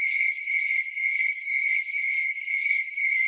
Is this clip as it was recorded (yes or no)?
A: no